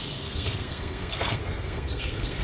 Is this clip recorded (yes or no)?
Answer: no